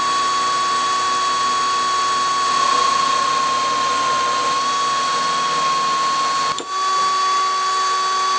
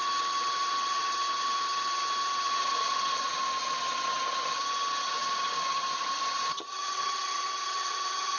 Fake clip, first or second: second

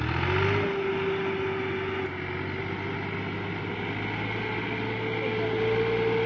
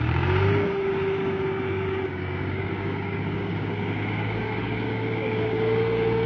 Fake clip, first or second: second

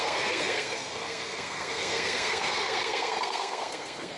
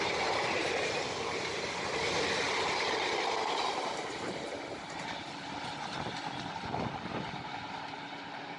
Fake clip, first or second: first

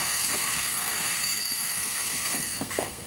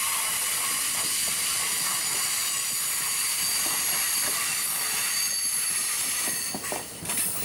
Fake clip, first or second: first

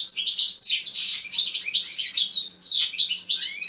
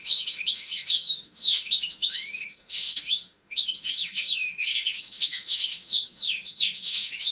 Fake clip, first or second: second